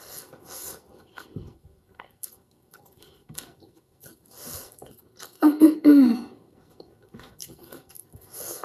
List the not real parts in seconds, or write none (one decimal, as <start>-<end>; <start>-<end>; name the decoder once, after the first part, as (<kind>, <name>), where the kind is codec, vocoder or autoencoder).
0.0-8.6 (codec, SNAC)